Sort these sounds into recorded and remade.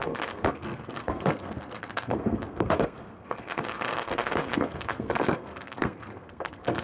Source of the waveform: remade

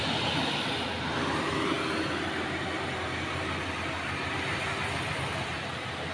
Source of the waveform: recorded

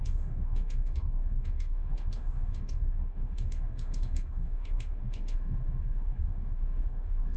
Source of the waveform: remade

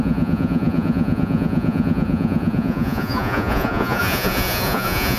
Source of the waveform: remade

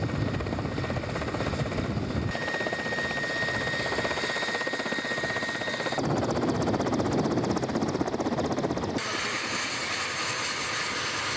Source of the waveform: recorded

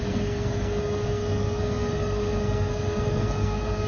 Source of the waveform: remade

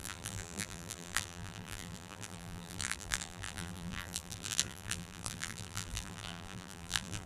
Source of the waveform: remade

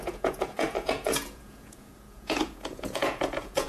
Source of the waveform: remade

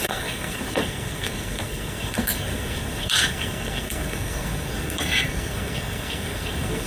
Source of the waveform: remade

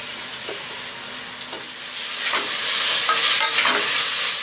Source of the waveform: recorded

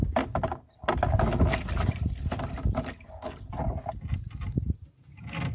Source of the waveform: recorded